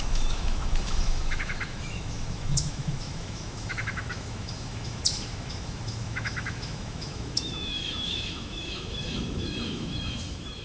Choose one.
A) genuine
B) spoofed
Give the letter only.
B